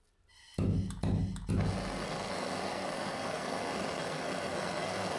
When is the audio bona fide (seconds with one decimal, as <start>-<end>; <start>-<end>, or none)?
0.0-2.0